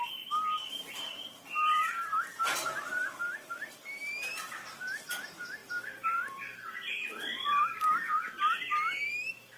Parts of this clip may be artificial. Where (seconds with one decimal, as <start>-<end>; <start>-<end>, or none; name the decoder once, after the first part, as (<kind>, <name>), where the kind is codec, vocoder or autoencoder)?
0.7-9.6 (vocoder, BigVGAN v2)

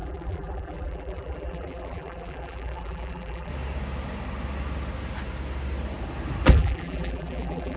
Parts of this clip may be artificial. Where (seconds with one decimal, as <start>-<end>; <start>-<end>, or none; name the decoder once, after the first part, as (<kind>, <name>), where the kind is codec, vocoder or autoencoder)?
0.0-3.5 (vocoder, BigVGAN v2); 6.5-7.8